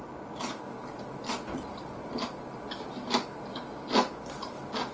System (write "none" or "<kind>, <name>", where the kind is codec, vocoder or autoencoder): none